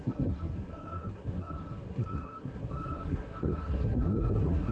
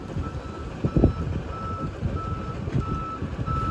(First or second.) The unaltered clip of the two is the second